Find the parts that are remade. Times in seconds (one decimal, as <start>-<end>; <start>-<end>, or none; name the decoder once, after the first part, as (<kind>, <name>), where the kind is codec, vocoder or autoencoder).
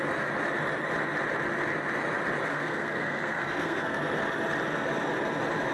2.5-4.0 (codec, SNAC)